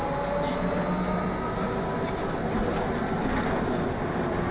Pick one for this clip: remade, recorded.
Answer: recorded